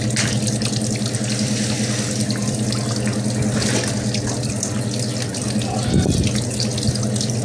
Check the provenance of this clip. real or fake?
real